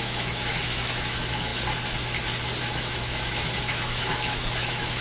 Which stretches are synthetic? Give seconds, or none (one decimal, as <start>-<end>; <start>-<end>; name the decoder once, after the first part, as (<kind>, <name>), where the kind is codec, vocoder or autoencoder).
0.0-1.5 (autoencoder, DAC-VAE); 2.6-5.0